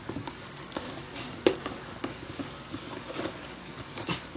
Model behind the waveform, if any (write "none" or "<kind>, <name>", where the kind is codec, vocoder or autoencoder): codec, DAC